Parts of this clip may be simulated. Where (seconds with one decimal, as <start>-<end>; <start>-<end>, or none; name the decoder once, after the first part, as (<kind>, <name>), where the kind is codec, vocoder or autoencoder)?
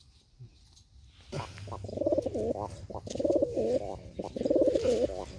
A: none